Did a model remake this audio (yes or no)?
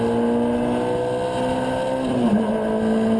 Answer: no